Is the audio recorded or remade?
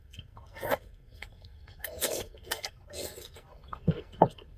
remade